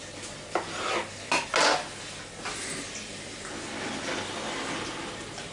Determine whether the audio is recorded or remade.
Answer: recorded